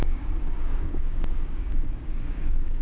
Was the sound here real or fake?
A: fake